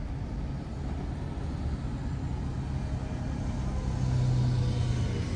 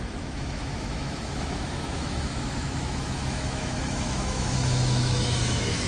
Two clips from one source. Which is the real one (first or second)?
first